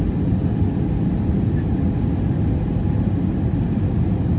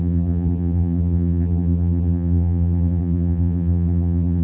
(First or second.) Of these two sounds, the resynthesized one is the second